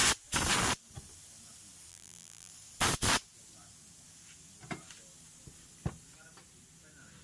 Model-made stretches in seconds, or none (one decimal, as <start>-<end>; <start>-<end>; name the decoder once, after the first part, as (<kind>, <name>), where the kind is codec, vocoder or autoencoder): 1.9-2.5 (vocoder, BigVGAN v2)